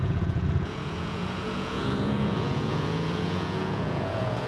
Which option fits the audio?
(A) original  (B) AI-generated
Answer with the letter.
B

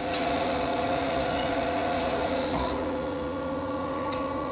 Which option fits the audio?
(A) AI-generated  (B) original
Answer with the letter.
A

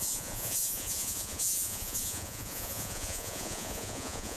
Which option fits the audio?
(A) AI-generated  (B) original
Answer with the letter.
A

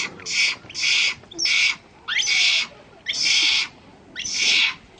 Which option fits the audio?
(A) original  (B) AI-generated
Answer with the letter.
A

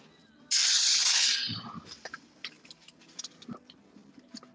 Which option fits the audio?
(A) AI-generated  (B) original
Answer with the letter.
B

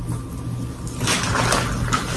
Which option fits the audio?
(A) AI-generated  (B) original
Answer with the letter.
B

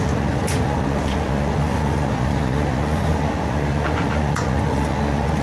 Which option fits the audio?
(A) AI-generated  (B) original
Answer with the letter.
A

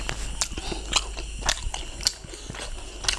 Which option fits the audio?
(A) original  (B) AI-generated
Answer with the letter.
A